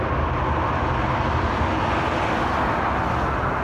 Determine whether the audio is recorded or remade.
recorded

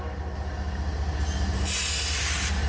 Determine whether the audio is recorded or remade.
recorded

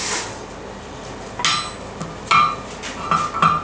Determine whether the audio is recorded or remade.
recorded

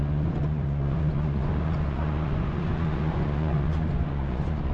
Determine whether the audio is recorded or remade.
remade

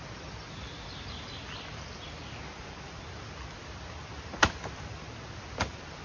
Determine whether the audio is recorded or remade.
recorded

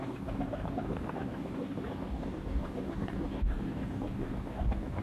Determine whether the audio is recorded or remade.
remade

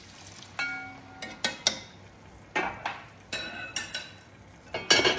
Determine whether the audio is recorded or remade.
recorded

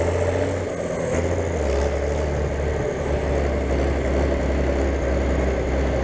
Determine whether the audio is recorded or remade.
recorded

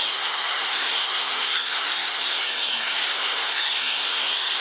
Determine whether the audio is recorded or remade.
remade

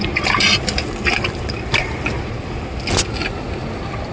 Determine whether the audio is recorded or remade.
recorded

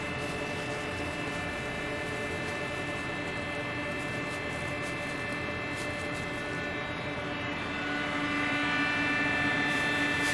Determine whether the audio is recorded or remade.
recorded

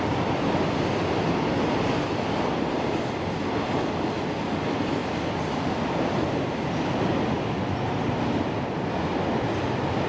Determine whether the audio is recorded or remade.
recorded